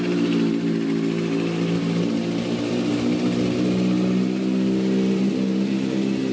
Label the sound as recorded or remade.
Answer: recorded